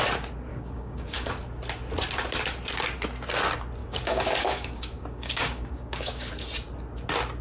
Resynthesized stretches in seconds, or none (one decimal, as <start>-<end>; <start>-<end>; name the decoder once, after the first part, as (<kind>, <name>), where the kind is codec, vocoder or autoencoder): 0.5-1.3 (codec, DAC); 3.8-6.3